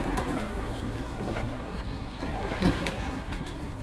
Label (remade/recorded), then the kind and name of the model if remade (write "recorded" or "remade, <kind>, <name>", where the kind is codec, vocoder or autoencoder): remade, codec, SNAC